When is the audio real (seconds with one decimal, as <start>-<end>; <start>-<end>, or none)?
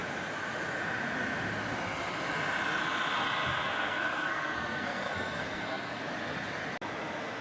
0.0-3.5; 6.0-7.4